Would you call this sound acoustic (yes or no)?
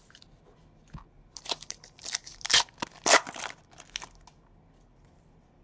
yes